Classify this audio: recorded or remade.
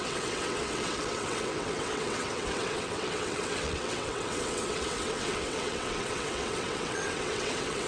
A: remade